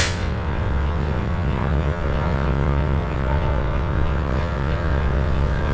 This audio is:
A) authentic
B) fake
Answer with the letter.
B